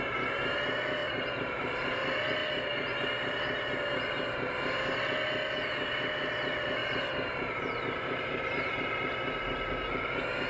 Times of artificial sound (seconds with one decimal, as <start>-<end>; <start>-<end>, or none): 1.0-2.0; 6.8-9.7